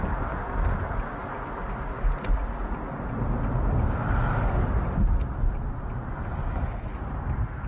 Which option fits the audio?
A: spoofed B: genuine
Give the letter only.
B